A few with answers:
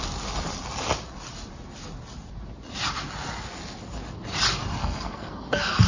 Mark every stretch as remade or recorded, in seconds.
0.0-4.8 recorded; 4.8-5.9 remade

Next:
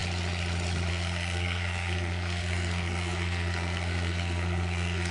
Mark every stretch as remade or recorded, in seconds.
0.0-0.9 recorded; 0.9-5.1 remade

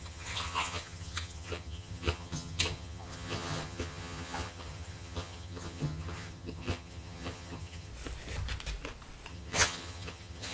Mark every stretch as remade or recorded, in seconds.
0.0-7.9 remade; 7.9-9.3 recorded; 9.3-10.5 remade

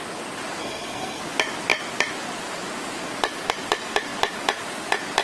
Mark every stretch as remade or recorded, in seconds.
0.0-0.6 recorded; 0.6-1.2 remade; 1.2-5.2 recorded

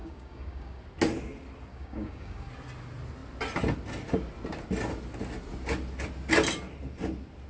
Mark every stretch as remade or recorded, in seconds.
0.0-0.8 remade; 0.8-1.7 recorded; 1.7-2.5 remade; 2.5-7.5 recorded

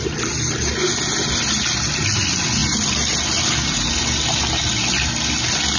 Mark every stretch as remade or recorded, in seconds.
0.0-5.8 recorded